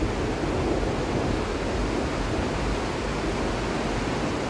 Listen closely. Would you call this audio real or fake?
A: real